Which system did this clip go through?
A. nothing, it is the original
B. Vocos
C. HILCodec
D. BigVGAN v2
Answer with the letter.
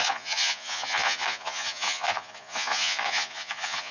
B